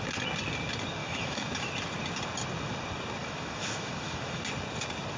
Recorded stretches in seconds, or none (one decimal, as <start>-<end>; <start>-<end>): 0.0-1.0; 1.7-3.2; 4.4-5.2